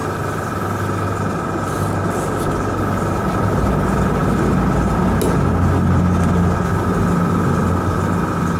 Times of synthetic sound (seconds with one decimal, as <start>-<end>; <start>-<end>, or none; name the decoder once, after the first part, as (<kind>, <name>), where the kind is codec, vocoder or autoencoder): none

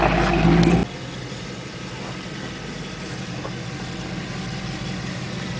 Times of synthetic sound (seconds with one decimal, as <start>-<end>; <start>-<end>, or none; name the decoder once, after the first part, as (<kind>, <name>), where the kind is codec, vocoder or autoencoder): none

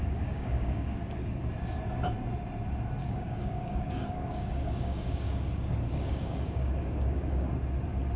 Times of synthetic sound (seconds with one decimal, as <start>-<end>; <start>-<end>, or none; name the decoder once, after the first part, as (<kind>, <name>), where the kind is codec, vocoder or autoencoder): 0.0-1.4 (codec, DAC); 3.0-7.5

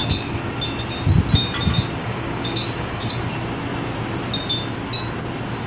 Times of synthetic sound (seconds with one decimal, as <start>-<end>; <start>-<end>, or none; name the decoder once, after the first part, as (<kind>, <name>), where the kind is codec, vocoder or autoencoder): 2.0-3.3 (codec, DAC)

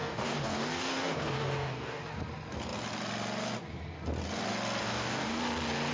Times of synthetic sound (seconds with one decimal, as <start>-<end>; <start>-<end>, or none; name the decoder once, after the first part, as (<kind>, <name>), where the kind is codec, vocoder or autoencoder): 0.0-2.0 (codec, DAC); 4.8-5.4

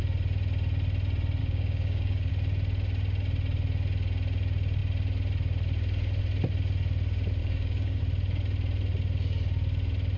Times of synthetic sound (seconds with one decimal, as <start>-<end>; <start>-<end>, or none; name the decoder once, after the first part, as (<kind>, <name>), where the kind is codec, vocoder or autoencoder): 1.4-2.3 (codec, DAC); 7.4-8.0

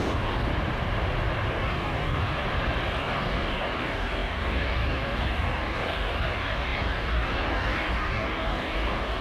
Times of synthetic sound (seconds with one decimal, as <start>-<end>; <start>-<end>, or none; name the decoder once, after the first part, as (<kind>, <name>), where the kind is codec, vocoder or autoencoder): 0.0-0.5 (codec, DAC); 1.5-2.4; 3.0-9.2

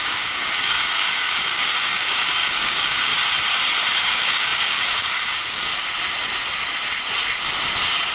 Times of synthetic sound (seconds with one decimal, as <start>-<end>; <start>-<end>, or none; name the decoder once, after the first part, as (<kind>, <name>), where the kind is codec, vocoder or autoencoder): 0.0-3.1 (codec, DAC); 3.9-5.7